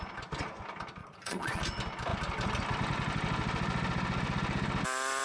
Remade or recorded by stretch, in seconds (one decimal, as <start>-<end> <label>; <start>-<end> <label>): 0.0-1.0 recorded; 1.0-1.6 remade; 1.6-5.2 recorded